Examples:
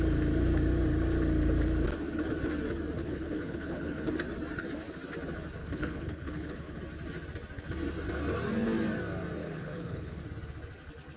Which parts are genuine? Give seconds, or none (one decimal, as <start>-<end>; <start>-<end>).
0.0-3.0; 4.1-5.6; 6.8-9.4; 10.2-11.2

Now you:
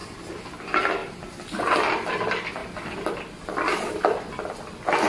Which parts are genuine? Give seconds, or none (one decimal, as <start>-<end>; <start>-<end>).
0.0-5.1

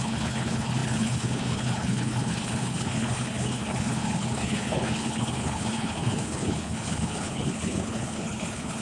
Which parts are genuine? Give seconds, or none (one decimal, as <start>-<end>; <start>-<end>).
none

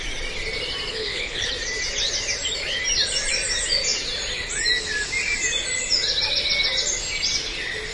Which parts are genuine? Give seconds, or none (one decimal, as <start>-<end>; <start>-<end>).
0.0-0.9; 1.5-7.9